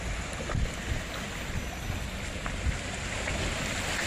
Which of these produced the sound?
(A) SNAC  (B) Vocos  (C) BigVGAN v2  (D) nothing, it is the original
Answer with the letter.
D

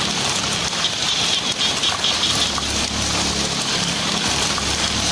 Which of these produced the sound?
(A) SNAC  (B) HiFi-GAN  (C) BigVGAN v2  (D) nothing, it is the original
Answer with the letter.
D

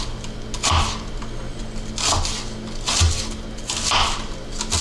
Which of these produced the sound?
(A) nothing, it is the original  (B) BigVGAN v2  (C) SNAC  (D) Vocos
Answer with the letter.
A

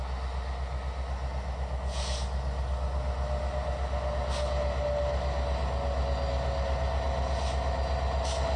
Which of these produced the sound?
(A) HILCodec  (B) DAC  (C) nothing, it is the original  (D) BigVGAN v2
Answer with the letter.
C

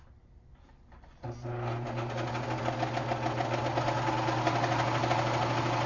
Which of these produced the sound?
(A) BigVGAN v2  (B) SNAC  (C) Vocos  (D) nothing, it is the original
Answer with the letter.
D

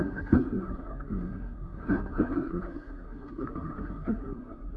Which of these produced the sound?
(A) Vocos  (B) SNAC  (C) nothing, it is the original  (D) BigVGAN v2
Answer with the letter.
B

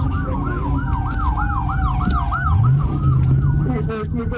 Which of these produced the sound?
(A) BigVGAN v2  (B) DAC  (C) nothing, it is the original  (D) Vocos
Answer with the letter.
C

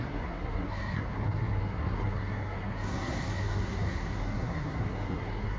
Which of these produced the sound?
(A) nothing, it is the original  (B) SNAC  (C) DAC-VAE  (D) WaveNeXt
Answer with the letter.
B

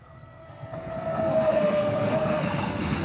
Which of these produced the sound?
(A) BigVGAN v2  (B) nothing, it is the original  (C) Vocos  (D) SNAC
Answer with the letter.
D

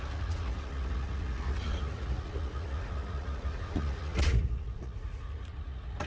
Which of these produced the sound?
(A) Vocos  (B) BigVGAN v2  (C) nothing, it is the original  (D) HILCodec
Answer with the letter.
A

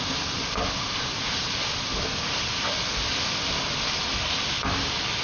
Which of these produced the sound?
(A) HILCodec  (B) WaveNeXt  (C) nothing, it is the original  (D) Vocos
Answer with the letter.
C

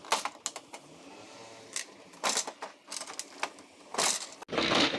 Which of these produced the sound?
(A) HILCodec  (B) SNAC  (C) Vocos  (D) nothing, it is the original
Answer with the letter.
D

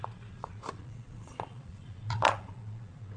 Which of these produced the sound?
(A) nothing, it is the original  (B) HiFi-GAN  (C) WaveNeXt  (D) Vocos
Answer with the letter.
D